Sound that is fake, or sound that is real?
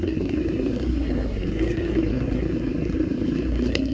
fake